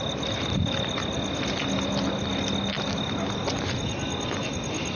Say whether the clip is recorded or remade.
recorded